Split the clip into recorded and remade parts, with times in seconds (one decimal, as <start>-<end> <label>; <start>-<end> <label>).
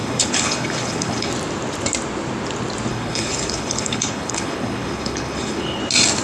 0.0-1.3 remade; 1.3-2.9 recorded; 2.9-5.8 remade; 5.8-6.2 recorded